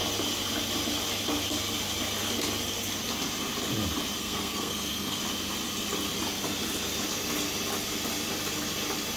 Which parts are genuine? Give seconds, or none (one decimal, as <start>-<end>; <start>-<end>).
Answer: 0.0-4.2; 5.2-9.2